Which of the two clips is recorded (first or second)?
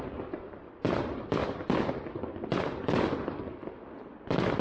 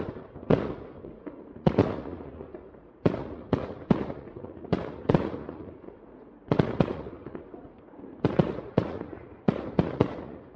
first